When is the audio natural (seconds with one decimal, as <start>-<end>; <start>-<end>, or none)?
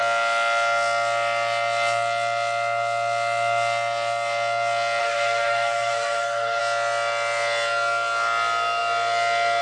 0.0-5.0; 6.6-9.6